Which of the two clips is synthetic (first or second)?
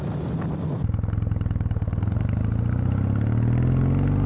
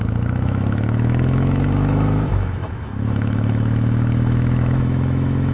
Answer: second